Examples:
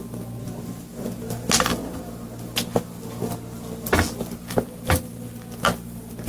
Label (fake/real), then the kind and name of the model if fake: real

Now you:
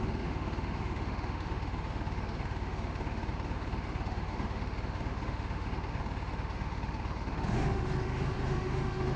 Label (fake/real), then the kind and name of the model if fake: fake, autoencoder, DAC-VAE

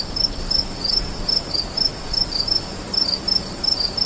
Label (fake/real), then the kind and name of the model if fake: real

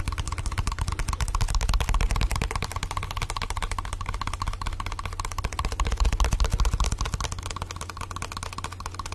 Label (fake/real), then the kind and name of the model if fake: real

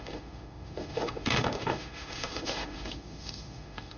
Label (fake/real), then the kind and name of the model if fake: fake, autoencoder, DAC-VAE